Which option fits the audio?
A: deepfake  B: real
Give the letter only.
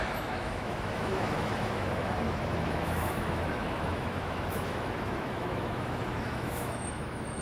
A